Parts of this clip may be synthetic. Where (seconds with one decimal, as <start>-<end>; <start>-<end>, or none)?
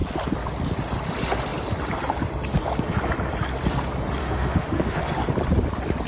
4.2-5.0